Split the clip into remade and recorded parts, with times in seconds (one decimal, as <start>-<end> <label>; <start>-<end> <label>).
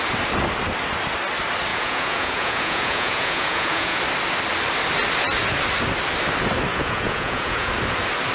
0.0-1.7 recorded; 1.7-4.0 remade; 4.0-6.7 recorded; 6.7-7.7 remade; 7.7-8.3 recorded